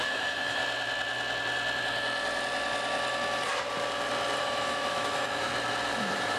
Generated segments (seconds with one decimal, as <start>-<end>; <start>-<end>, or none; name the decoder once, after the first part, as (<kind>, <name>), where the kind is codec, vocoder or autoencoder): 0.0-0.6 (autoencoder, DAC-VAE); 4.4-5.5; 6.0-6.4